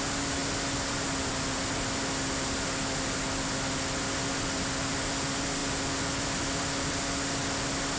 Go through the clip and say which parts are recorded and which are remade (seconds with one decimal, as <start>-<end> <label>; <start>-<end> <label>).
0.0-8.0 recorded